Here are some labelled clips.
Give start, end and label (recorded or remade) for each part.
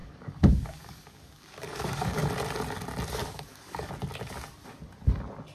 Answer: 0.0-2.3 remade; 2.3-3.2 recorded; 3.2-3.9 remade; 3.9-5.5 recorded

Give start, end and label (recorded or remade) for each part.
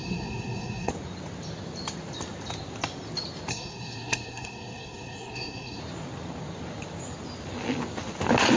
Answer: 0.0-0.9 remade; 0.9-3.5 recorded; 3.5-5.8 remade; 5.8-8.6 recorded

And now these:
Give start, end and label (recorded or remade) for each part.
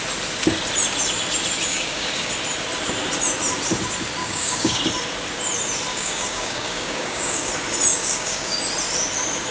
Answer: 0.0-1.7 recorded; 1.7-2.3 remade; 2.3-4.2 recorded; 4.2-4.8 remade; 4.8-5.9 recorded; 5.9-7.5 remade; 7.5-7.9 recorded; 7.9-8.6 remade; 8.6-9.5 recorded